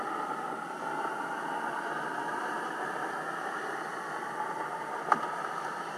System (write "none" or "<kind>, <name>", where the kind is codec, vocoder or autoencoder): none